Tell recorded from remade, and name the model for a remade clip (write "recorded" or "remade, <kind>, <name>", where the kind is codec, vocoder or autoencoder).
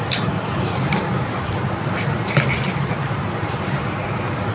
remade, vocoder, BigVGAN v2